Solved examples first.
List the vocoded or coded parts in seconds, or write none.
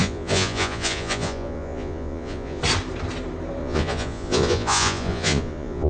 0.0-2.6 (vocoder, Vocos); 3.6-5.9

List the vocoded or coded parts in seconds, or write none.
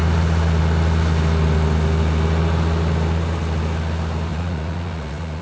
4.3-5.4 (vocoder, Vocos)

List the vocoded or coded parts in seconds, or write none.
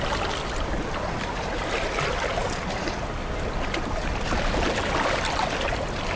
none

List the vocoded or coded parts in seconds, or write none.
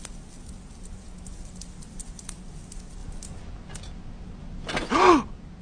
none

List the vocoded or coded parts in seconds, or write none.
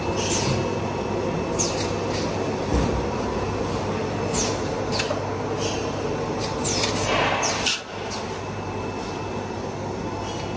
none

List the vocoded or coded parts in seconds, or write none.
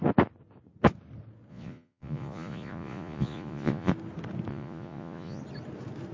1.5-3.9 (vocoder, Vocos); 4.5-5.4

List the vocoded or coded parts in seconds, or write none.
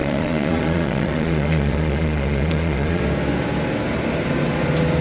0.0-3.0 (vocoder, Vocos)